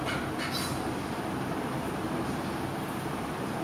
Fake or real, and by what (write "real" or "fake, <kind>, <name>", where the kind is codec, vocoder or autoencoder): real